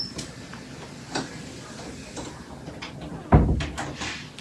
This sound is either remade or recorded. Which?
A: recorded